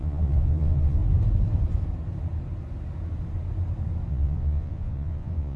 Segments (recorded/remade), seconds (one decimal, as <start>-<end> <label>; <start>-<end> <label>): 0.0-1.0 remade; 1.0-4.1 recorded; 4.1-5.6 remade